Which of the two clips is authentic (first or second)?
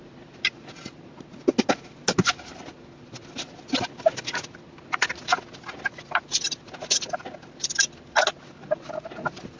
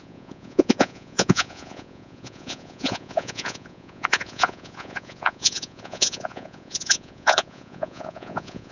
first